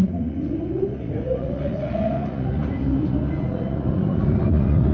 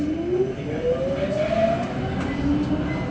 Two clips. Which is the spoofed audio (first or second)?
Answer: first